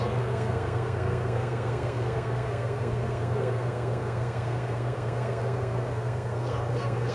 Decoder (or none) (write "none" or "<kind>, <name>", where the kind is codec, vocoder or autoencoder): codec, SNAC